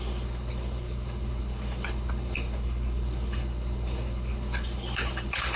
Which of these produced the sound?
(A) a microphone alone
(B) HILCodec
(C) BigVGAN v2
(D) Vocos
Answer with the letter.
B